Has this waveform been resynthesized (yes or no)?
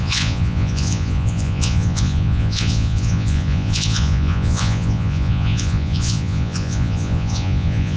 yes